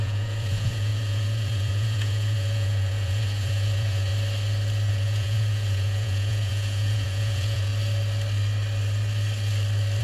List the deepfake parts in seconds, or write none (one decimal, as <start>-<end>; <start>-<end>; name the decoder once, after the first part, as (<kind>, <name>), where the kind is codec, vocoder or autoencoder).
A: 0.0-4.1 (vocoder, Vocos); 4.9-7.7